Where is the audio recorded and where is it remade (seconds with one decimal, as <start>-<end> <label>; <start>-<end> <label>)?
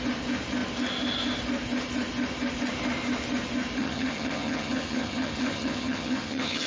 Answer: 0.0-3.8 recorded; 3.8-6.7 remade